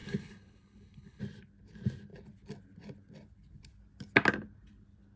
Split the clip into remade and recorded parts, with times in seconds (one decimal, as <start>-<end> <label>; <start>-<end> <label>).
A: 0.0-1.2 remade; 1.2-5.2 recorded